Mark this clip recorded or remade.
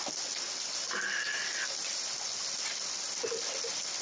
recorded